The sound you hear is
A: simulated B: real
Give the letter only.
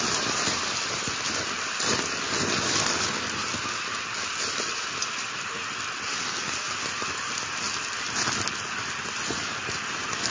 B